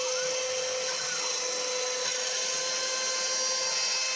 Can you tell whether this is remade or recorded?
recorded